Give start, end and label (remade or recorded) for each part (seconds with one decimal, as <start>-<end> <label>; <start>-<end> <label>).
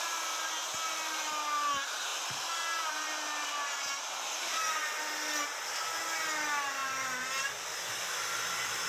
0.0-8.9 recorded